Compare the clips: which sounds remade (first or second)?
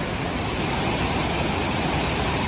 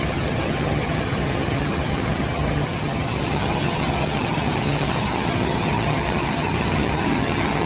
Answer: second